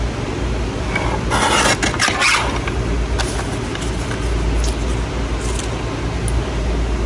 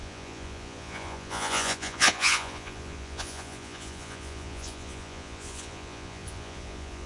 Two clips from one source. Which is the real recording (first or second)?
first